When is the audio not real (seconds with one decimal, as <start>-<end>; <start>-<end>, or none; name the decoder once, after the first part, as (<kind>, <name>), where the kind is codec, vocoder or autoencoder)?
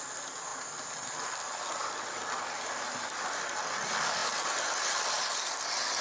none